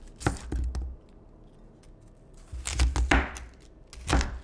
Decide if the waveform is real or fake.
real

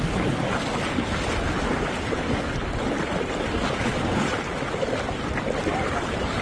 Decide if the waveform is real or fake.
real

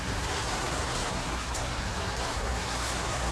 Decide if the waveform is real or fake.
fake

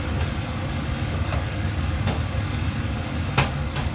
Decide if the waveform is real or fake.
fake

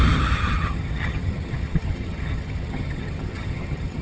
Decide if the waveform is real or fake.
fake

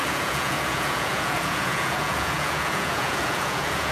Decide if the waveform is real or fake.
fake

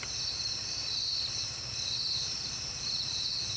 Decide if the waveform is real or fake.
fake